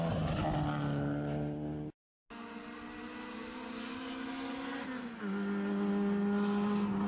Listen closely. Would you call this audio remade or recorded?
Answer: recorded